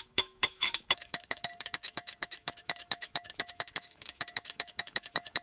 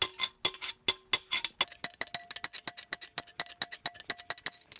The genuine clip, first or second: second